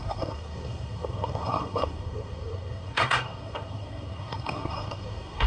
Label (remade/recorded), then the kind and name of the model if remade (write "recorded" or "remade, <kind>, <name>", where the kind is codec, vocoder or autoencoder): remade, codec, SNAC